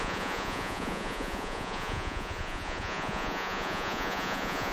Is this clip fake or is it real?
fake